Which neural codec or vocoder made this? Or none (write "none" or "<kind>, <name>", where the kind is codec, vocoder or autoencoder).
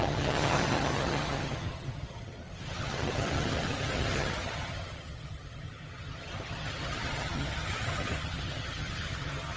vocoder, HiFi-GAN